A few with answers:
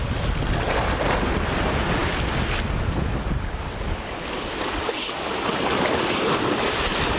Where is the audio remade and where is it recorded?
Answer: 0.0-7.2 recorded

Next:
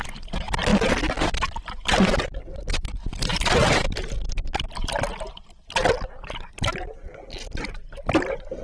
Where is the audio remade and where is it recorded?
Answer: 0.0-8.6 recorded

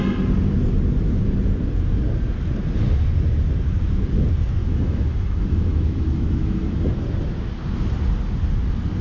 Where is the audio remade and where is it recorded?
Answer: 0.0-4.6 recorded; 4.6-7.0 remade; 7.0-9.0 recorded

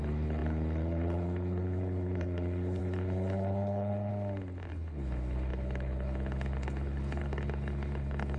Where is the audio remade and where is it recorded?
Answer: 0.0-4.1 remade; 4.1-4.7 recorded; 4.7-8.4 remade

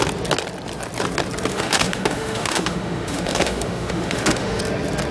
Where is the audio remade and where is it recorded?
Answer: 0.0-1.5 recorded; 1.5-4.6 remade; 4.6-5.1 recorded

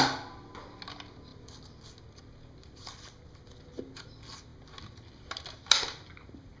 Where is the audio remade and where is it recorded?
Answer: 0.0-6.6 recorded

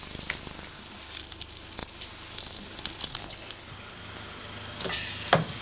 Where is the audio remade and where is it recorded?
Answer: 0.0-3.1 recorded; 3.1-3.6 remade; 3.6-5.6 recorded

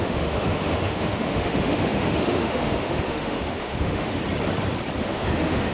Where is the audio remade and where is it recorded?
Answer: 0.0-4.2 remade; 4.2-5.0 recorded; 5.0-5.7 remade